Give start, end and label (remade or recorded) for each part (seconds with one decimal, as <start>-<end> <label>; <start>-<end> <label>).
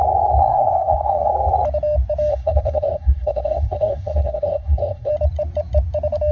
0.0-0.4 recorded; 0.4-1.3 remade; 1.3-2.3 recorded; 2.3-5.1 remade; 5.1-6.3 recorded